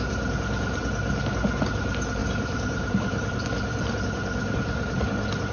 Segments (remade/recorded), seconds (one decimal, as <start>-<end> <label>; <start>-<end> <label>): 0.0-2.2 recorded; 2.2-3.9 remade; 3.9-5.5 recorded